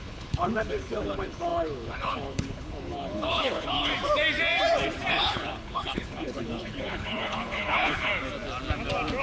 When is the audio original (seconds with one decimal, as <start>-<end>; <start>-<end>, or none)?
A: 3.9-5.1; 8.1-9.2